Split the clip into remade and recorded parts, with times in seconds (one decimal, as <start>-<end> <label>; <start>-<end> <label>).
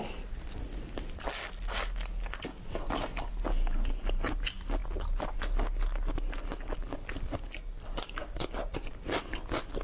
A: 0.0-9.8 recorded